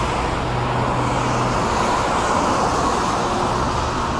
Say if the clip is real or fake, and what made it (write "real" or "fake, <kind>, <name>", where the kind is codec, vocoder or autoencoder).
real